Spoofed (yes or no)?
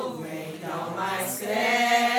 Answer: no